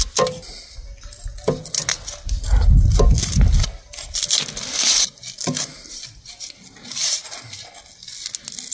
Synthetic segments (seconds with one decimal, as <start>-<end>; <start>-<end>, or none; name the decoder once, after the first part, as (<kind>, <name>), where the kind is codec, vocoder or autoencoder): none